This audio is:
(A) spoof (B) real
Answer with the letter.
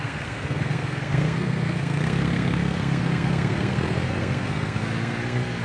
A